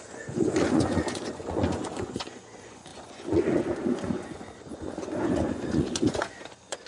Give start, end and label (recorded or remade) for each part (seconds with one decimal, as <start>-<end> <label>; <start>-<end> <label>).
0.0-6.9 remade